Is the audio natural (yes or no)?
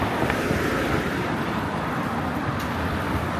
no